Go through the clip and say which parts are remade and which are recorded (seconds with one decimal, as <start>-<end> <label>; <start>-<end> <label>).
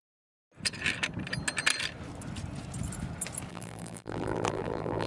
0.0-0.4 remade; 0.4-3.5 recorded; 3.5-5.1 remade